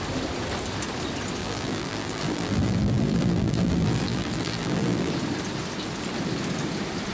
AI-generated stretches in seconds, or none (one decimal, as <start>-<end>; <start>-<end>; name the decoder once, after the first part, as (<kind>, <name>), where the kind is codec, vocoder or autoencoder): 1.4-5.1 (vocoder, BigVGAN v2)